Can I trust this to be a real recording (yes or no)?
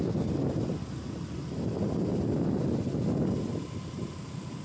yes